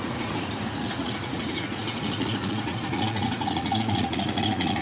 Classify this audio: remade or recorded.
remade